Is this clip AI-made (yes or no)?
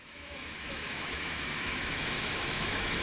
yes